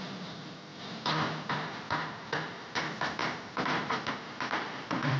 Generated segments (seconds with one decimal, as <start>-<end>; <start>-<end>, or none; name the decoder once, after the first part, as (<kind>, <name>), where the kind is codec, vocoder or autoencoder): 0.0-0.7 (vocoder, BigVGAN v2); 2.5-3.2; 4.5-5.2